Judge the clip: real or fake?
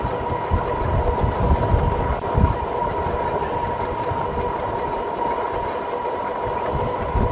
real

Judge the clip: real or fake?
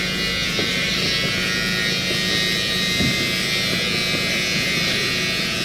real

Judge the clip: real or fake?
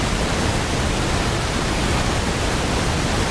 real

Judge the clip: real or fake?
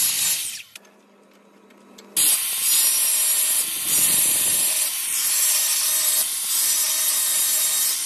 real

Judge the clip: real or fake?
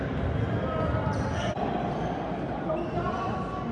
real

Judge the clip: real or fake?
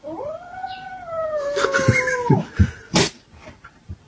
real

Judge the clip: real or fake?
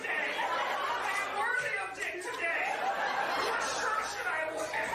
real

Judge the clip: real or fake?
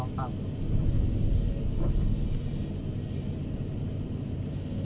real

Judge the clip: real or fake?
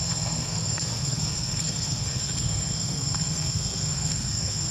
fake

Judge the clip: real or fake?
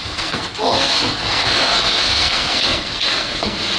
fake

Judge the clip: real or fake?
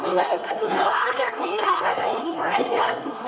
fake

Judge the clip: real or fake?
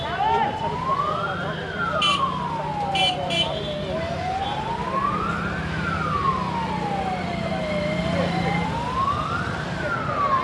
real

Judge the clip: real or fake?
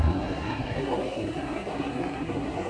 fake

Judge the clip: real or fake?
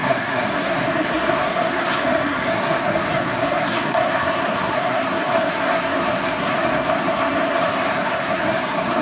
fake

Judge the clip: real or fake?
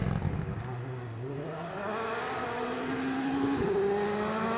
real